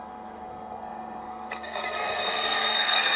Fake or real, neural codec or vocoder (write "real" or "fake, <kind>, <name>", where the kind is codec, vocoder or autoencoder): fake, codec, SNAC